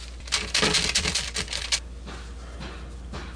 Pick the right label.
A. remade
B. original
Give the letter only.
B